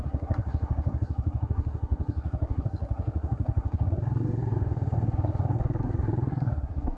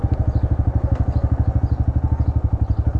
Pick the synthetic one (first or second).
first